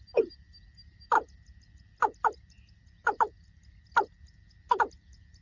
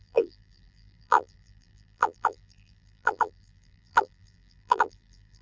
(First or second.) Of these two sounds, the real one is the first